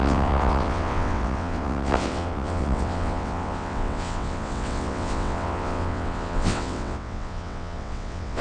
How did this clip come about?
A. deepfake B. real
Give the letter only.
A